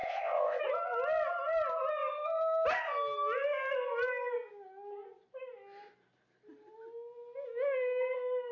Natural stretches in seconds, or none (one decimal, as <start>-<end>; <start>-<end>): 0.6-8.5